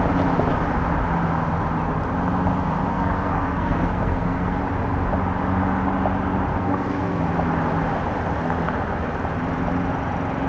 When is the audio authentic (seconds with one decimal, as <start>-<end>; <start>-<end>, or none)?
0.0-2.9; 4.6-6.5; 7.2-10.5